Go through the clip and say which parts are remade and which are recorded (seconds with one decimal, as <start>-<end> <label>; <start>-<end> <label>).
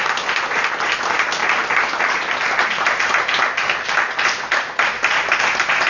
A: 0.0-5.9 recorded